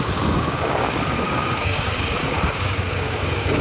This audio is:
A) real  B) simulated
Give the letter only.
B